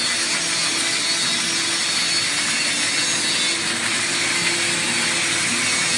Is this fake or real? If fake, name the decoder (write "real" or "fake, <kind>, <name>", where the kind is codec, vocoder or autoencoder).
real